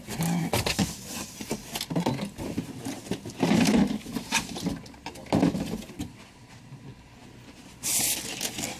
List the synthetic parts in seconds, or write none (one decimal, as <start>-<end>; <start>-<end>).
none